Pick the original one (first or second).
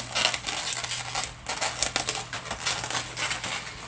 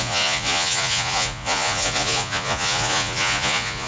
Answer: first